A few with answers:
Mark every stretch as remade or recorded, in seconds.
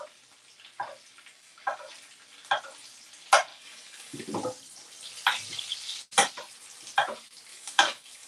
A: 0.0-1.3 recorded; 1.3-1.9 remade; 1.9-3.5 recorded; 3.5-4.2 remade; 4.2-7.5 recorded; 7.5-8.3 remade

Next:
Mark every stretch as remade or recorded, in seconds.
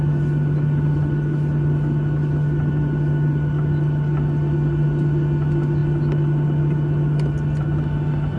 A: 0.0-8.4 recorded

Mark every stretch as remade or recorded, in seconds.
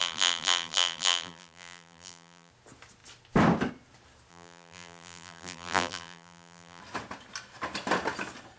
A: 0.0-2.5 remade; 2.5-4.3 recorded; 4.3-6.8 remade; 6.8-8.6 recorded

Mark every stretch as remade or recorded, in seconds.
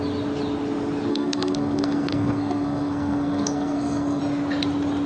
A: 0.0-1.1 recorded; 1.1-4.2 remade; 4.2-5.1 recorded